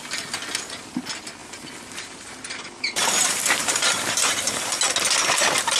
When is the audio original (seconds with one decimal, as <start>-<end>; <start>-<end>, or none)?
0.0-1.4; 4.8-5.8